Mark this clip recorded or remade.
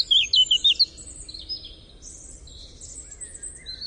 recorded